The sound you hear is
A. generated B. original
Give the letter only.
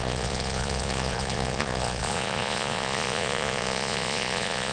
A